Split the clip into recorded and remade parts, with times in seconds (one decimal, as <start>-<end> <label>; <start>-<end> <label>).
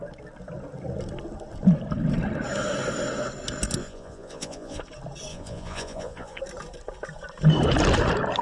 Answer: 0.0-3.8 recorded; 3.8-4.8 remade; 4.8-5.3 recorded; 5.3-6.4 remade; 6.4-8.4 recorded